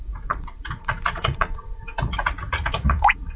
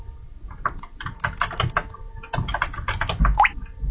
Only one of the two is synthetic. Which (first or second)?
first